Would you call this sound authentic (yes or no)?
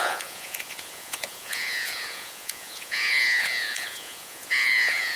no